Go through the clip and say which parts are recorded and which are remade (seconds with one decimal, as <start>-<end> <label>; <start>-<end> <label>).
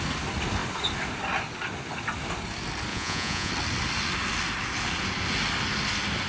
0.0-2.9 recorded; 2.9-3.5 remade; 3.5-6.3 recorded